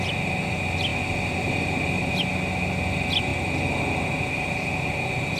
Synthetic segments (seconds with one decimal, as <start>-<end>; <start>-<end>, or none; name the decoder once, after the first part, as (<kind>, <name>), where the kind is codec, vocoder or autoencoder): none